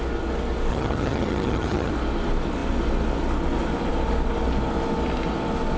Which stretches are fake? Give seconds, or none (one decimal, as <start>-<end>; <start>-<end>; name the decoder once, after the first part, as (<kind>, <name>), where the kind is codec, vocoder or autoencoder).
0.7-1.9 (vocoder, HiFi-GAN)